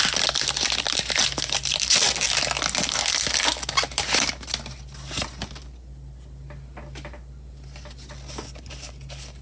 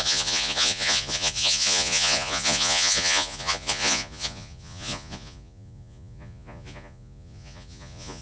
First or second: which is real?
first